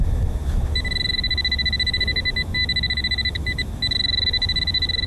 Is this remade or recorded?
remade